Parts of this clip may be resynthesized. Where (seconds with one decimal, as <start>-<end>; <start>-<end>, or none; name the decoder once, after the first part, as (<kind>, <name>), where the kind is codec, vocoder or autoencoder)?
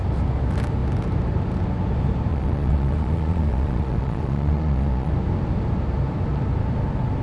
2.3-5.1 (vocoder, Vocos)